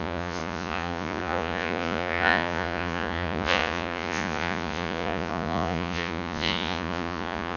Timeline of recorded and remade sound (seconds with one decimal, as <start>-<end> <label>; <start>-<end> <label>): 0.0-7.6 remade